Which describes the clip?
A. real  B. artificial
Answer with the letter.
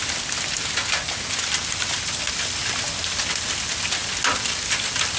A